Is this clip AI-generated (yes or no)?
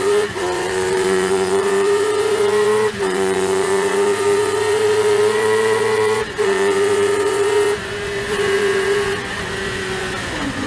yes